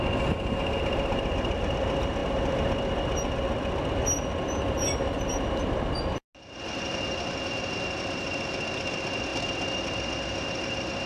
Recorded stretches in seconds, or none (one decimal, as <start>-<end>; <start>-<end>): 0.0-11.1